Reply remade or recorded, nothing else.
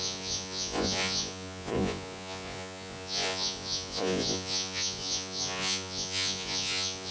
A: remade